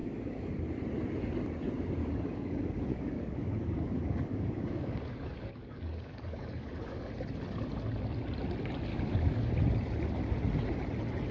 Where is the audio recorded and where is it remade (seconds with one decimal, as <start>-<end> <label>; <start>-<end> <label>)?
0.0-0.5 remade; 0.5-2.0 recorded; 2.0-7.1 remade; 7.1-8.9 recorded; 8.9-9.5 remade; 9.5-11.3 recorded